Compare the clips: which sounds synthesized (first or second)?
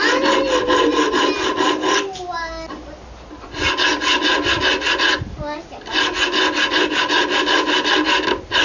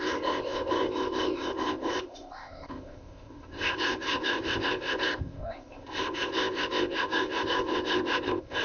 second